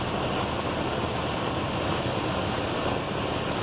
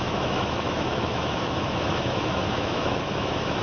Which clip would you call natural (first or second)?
first